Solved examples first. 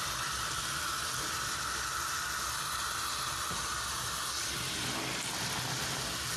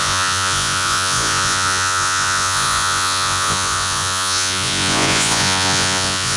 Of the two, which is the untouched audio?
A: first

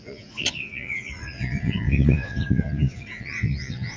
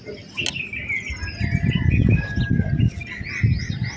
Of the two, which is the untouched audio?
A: second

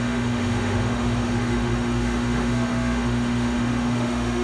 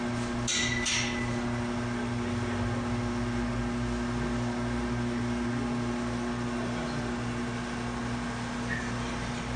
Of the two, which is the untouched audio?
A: second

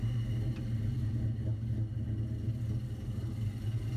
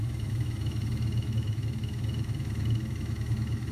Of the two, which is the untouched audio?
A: first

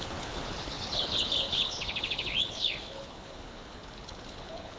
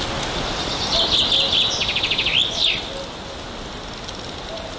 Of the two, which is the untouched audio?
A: second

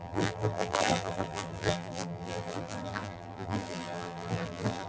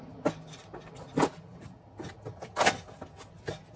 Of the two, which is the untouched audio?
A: second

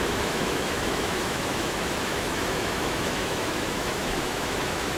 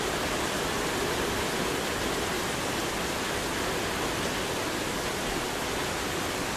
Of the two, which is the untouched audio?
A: second